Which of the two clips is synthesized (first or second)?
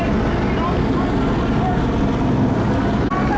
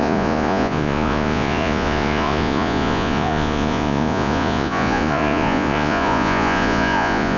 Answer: second